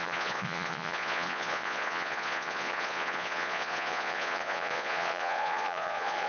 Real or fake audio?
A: fake